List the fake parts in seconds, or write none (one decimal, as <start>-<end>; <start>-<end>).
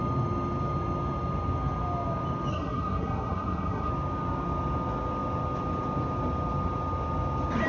2.5-3.9